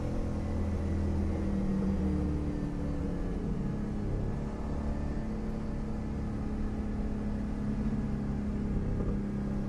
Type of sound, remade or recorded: recorded